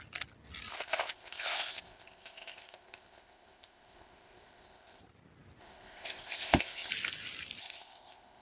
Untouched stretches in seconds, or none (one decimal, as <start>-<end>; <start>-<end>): 0.0-0.7; 5.0-5.6; 6.9-7.6

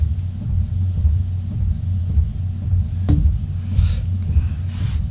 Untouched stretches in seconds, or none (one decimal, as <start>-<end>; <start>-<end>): 0.0-5.1

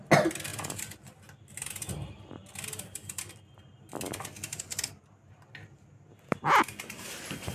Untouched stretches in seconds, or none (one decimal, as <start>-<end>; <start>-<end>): 0.0-7.5